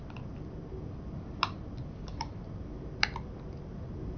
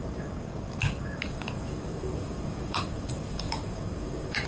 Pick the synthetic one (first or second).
second